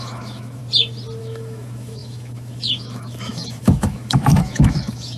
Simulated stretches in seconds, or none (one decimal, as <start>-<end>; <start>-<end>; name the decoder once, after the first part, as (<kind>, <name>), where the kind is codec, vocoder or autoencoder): 0.0-0.6 (autoencoder, DAC-VAE); 1.2-5.2